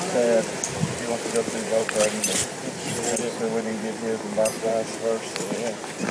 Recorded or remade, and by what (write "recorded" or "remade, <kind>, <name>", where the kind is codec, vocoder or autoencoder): recorded